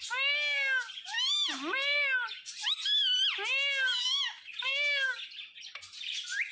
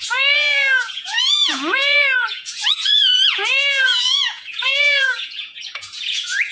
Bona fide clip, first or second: first